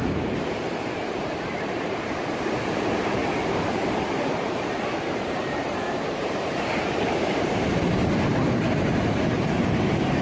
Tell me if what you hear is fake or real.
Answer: fake